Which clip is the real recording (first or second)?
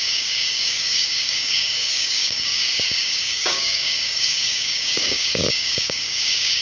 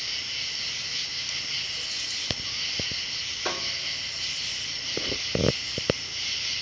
second